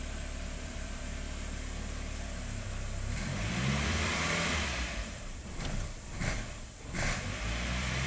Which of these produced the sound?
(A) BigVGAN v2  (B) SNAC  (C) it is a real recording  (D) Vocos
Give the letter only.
A